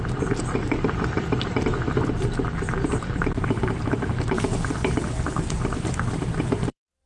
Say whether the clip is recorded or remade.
remade